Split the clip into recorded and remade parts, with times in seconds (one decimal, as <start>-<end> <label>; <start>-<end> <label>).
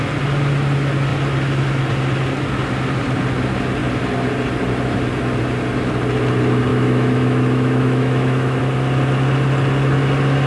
0.0-6.7 recorded; 6.7-8.6 remade; 8.6-10.5 recorded